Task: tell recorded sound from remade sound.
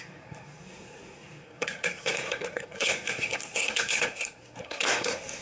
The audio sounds remade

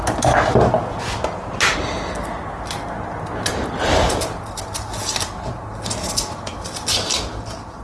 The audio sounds recorded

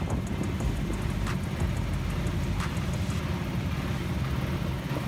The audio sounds recorded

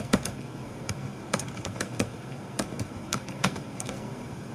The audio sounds remade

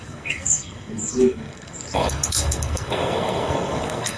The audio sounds remade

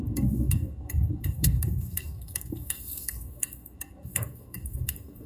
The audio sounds remade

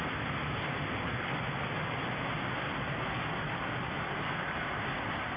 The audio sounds recorded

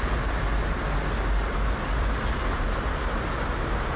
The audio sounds recorded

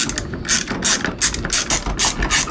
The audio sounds recorded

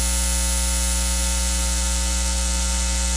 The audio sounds recorded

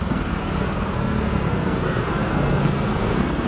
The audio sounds remade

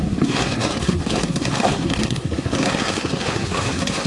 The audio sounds remade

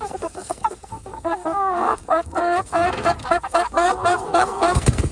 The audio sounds remade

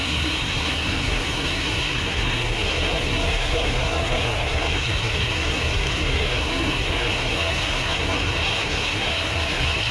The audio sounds remade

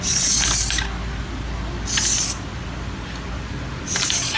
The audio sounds recorded